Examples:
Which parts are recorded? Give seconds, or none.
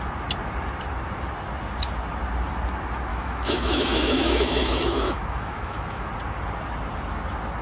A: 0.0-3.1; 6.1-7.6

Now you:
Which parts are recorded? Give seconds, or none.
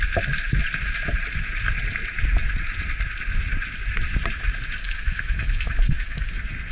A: 0.0-4.8; 6.3-6.7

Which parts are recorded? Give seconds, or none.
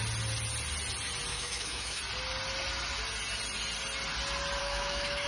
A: 0.0-1.3; 2.0-4.6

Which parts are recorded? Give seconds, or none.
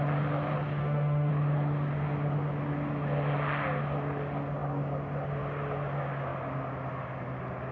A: 0.0-0.8; 1.3-7.7